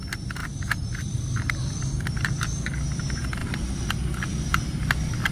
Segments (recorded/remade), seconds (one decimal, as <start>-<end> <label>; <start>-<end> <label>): 0.0-0.4 recorded; 0.4-1.5 remade; 1.5-3.4 recorded; 3.4-3.9 remade; 3.9-4.3 recorded; 4.3-5.3 remade